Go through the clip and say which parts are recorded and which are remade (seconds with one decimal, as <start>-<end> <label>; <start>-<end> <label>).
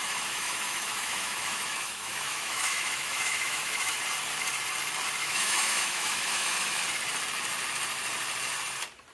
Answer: 0.0-4.0 remade; 4.0-5.2 recorded; 5.2-6.8 remade; 6.8-9.1 recorded